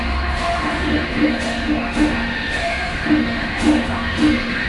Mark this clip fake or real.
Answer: fake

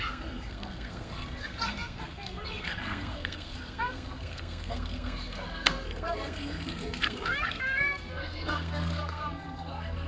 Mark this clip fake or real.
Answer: fake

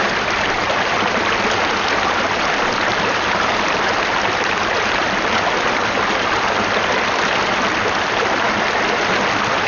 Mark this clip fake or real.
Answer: real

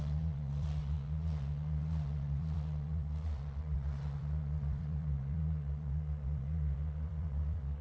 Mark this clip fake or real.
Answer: fake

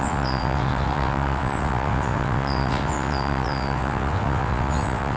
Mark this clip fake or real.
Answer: fake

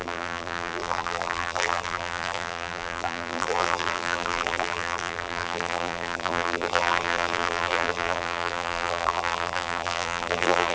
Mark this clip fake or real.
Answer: fake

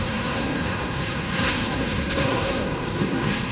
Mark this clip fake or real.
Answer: fake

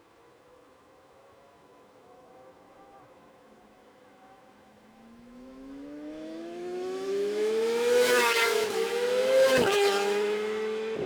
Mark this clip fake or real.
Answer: fake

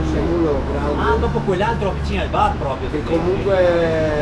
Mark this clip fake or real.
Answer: fake